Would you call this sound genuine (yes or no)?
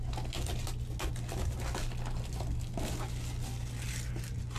yes